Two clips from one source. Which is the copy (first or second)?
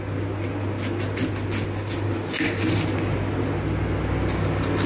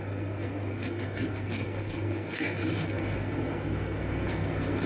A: second